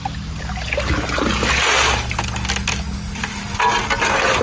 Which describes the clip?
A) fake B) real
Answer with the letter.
B